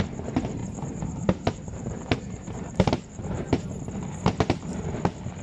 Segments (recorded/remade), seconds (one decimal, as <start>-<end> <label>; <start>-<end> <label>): 0.0-0.6 recorded; 0.6-3.8 remade; 3.8-5.4 recorded